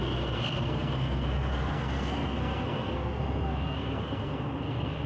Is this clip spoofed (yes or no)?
yes